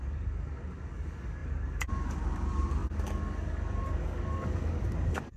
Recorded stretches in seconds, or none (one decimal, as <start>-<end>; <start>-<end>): none